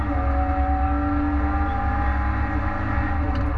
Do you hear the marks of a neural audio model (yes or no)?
no